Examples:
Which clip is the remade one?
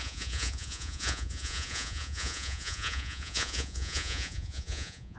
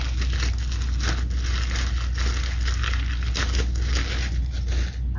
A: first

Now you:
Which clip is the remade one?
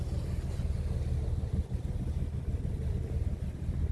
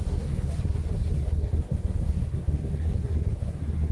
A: second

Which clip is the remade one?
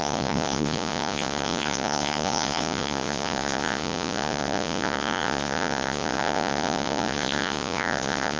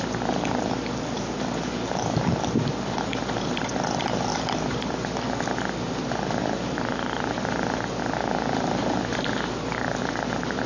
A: first